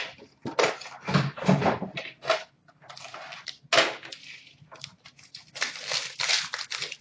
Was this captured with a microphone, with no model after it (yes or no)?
yes